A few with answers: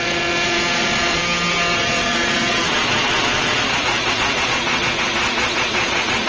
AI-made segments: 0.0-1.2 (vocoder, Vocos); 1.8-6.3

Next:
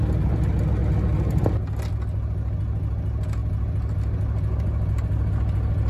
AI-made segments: none

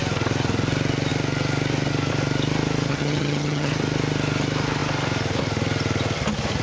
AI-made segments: 2.9-3.7 (vocoder, HiFi-GAN)

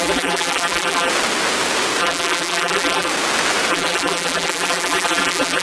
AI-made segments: 0.0-1.1 (vocoder, BigVGAN v2); 2.0-3.1; 3.7-5.6

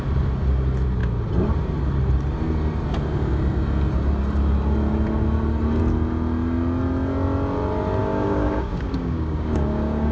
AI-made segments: 8.0-10.1 (codec, DAC)

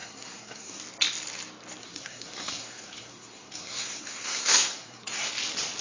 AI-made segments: 0.0-0.8 (codec, SNAC); 1.8-5.3